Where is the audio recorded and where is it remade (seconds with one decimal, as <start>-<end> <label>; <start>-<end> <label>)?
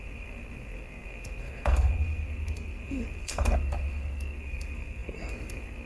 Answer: 0.0-5.9 remade